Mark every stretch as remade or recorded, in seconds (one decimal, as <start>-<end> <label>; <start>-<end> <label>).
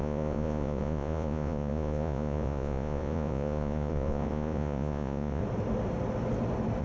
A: 0.0-5.4 remade; 5.4-6.8 recorded